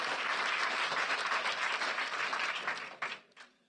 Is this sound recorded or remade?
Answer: recorded